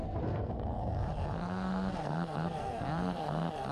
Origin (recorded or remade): remade